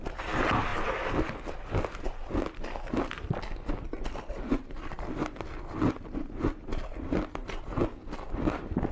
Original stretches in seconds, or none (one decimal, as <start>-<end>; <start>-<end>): 0.0-8.9

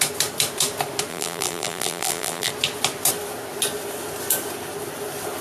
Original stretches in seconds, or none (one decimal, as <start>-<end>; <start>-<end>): 0.0-1.1; 2.5-5.4

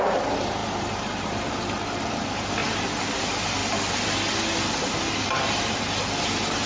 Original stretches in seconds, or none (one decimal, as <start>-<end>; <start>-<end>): 2.6-3.2; 3.6-5.5

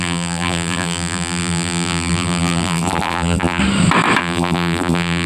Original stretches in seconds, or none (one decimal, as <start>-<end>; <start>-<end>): 3.6-4.2

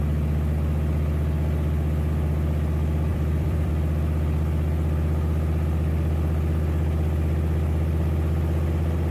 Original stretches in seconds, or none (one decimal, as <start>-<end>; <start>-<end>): 0.0-3.1; 3.7-9.1

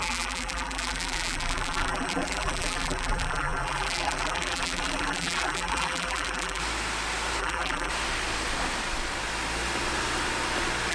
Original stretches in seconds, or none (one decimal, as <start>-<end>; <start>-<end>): 6.6-7.4; 7.9-10.9

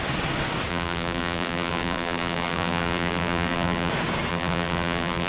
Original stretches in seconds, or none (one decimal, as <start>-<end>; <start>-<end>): 0.0-0.7; 3.9-4.3